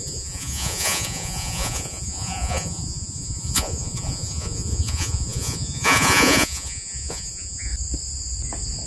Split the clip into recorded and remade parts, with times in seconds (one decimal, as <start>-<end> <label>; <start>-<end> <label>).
0.0-7.7 remade; 7.7-8.9 recorded